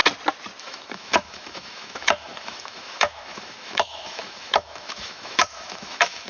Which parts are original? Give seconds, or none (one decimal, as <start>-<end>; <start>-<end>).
0.0-0.6